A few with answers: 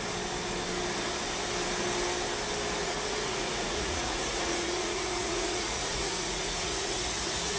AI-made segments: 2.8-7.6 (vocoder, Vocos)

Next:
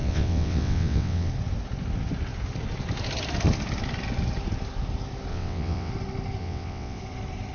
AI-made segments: 0.0-1.3 (vocoder, WaveNeXt); 5.3-5.9; 6.4-7.0

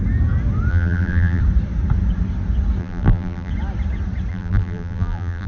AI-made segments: 0.7-1.4 (vocoder, BigVGAN v2); 2.8-3.5; 4.3-5.5

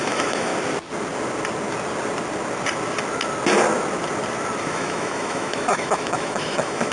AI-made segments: 0.0-0.5 (autoencoder, DAC-VAE); 4.6-6.9

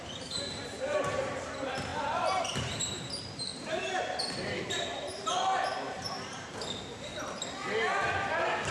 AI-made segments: 0.0-7.1 (vocoder, BigVGAN v2)